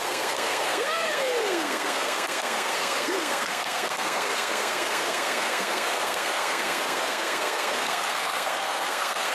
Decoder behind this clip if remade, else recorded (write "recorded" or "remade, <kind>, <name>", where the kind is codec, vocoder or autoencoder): remade, codec, SNAC